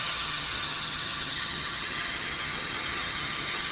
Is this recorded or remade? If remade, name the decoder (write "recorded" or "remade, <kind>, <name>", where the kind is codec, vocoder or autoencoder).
remade, vocoder, HiFi-GAN